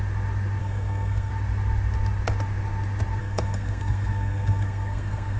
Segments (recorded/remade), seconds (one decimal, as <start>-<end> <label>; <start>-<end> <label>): 0.0-0.6 recorded; 0.6-1.3 remade; 1.3-3.2 recorded; 3.2-5.4 remade